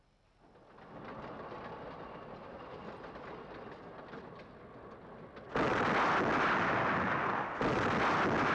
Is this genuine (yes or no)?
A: yes